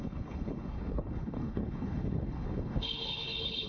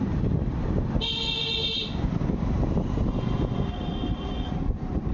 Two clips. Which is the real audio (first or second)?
second